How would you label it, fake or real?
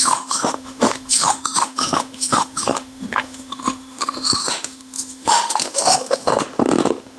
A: fake